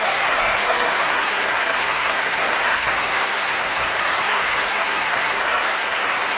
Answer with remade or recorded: remade